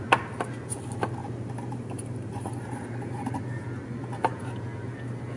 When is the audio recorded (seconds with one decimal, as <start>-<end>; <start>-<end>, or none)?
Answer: 0.0-1.2; 3.1-5.4